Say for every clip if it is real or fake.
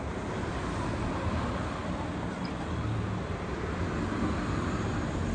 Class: real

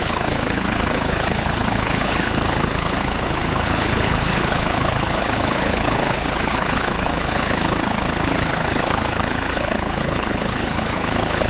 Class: fake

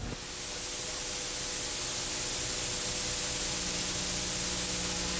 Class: real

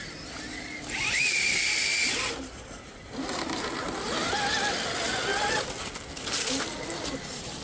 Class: real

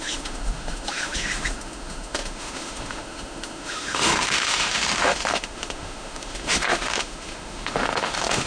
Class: fake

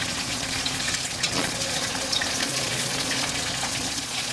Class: fake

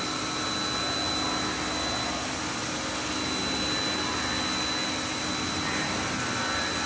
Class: real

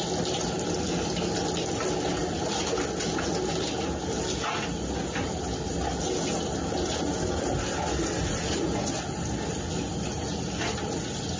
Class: real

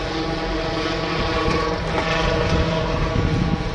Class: real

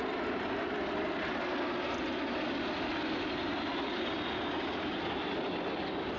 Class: real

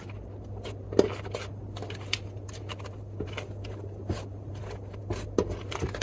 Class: real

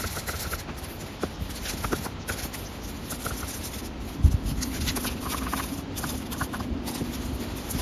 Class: real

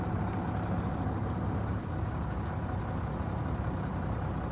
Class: real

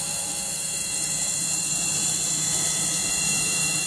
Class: fake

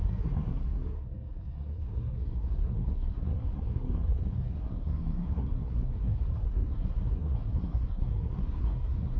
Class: fake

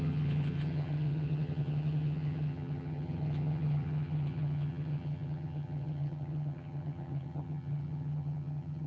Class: fake